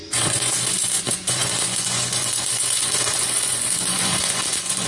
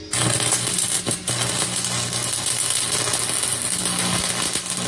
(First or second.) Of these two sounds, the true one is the second